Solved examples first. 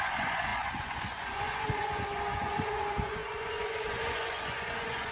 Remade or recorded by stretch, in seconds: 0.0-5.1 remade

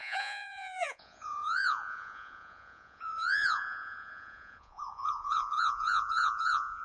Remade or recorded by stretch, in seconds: 0.0-6.8 remade

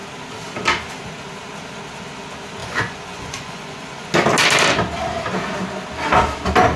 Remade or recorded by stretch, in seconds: 0.0-2.6 recorded; 2.6-4.1 remade; 4.1-6.8 recorded

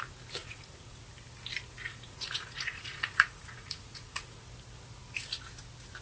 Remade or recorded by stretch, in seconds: 0.0-0.4 recorded; 0.4-1.0 remade; 1.0-1.8 recorded; 1.8-4.4 remade; 4.4-6.0 recorded

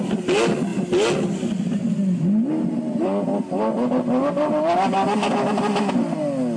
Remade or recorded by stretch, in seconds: 0.0-6.6 recorded

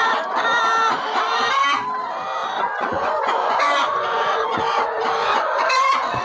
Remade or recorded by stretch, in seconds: 0.0-2.4 recorded; 2.4-4.6 remade; 4.6-5.2 recorded; 5.2-6.2 remade

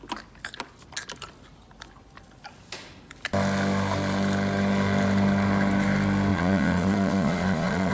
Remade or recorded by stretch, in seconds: 0.0-6.3 recorded; 6.3-7.9 remade